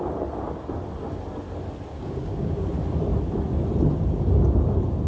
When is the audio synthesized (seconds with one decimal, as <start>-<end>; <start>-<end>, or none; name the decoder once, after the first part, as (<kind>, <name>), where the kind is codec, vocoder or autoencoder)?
1.9-2.7 (codec, DAC)